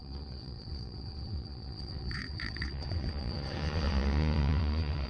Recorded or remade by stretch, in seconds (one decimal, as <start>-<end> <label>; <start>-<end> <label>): 0.0-5.1 remade